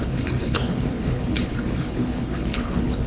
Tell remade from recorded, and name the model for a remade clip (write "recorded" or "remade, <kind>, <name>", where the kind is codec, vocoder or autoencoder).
remade, codec, HILCodec